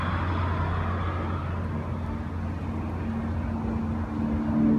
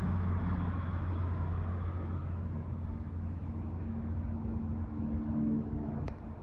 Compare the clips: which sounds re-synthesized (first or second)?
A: second